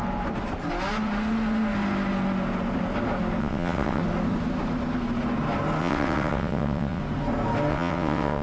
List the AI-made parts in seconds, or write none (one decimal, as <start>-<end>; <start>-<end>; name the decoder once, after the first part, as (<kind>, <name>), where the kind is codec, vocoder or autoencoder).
3.4-4.0 (vocoder, WaveNeXt); 5.8-7.0; 7.7-8.4